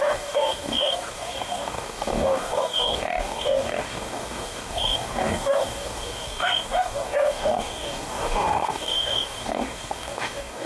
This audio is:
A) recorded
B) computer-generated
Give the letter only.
B